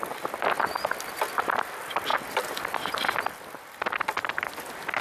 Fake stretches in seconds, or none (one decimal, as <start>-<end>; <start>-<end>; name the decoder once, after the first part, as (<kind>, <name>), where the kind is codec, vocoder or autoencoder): 2.1-4.6 (vocoder, BigVGAN v2)